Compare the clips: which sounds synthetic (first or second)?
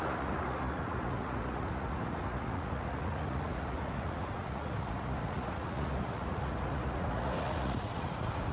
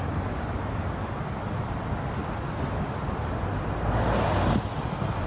first